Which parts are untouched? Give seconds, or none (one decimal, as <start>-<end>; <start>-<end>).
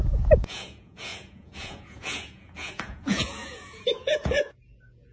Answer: none